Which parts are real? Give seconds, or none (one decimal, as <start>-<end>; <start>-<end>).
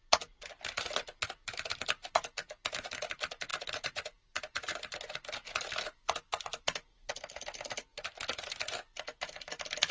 0.0-3.5; 4.8-6.5; 7.1-9.9